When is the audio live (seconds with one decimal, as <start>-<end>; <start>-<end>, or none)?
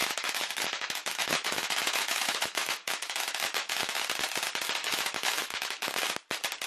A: 4.0-4.8; 5.9-6.7